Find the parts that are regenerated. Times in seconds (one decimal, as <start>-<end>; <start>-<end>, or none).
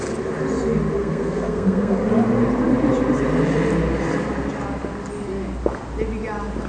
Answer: 1.0-2.1